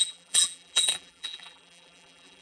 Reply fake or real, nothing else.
fake